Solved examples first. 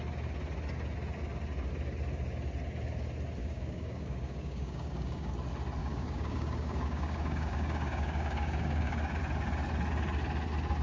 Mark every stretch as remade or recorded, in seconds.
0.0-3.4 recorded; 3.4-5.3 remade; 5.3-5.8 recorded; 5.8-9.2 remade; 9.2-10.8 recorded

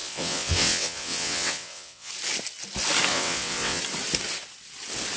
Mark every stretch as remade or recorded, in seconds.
0.0-2.1 remade; 2.1-3.1 recorded; 3.1-3.8 remade; 3.8-5.2 recorded

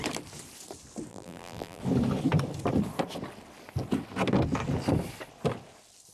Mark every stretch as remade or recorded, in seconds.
0.0-1.1 recorded; 1.1-1.8 remade; 1.8-6.1 recorded

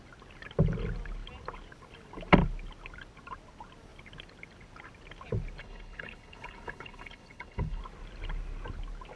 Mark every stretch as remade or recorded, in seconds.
0.0-5.6 recorded; 5.6-7.8 remade; 7.8-9.2 recorded

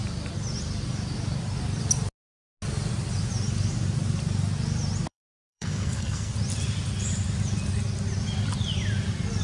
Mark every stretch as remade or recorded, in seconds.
0.0-5.1 recorded; 5.1-6.3 remade; 6.3-9.4 recorded

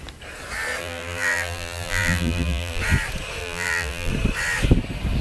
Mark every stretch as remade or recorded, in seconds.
0.0-0.8 recorded; 0.8-2.8 remade; 2.8-3.4 recorded; 3.4-4.1 remade; 4.1-5.2 recorded